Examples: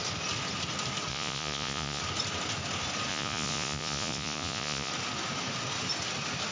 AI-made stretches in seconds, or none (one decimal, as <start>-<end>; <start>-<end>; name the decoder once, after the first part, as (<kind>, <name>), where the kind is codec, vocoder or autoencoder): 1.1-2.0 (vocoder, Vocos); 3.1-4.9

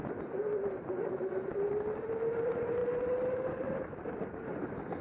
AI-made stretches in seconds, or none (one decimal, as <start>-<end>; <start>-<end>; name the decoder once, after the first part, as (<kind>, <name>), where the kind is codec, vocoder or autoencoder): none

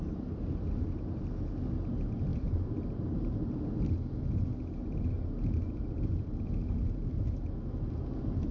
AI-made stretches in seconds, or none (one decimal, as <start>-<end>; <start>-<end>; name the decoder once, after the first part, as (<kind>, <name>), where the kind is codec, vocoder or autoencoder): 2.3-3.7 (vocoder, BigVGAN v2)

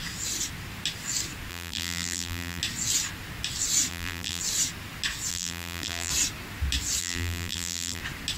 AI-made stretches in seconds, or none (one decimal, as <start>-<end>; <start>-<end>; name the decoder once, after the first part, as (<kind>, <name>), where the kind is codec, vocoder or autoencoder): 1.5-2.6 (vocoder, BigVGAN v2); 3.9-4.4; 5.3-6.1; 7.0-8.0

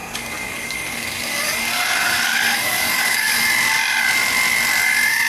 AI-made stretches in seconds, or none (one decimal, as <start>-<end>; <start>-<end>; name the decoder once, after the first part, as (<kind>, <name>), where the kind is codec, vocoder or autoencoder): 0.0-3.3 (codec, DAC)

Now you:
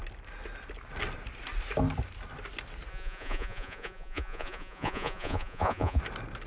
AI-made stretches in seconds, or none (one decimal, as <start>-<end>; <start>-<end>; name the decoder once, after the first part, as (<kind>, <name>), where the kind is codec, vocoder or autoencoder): 2.9-6.0 (vocoder, Vocos)